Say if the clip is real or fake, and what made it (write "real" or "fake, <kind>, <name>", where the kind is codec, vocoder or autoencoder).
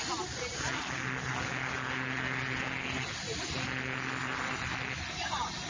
real